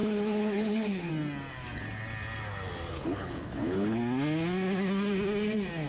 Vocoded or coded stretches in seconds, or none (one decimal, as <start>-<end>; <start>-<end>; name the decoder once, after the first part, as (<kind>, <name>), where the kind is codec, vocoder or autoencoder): 0.0-1.1 (codec, HILCodec); 2.9-4.0